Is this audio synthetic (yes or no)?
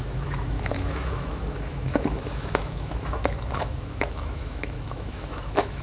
yes